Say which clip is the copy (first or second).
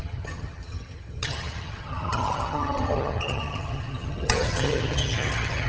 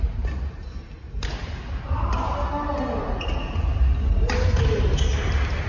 first